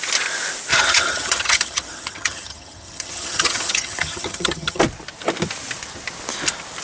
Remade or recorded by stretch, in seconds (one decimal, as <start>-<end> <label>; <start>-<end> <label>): 0.0-0.7 recorded; 0.7-4.8 remade; 4.8-6.8 recorded